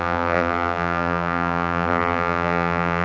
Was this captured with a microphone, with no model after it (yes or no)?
no